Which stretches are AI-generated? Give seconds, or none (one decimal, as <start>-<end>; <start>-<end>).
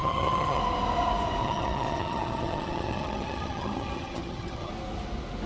0.0-0.6; 1.4-4.7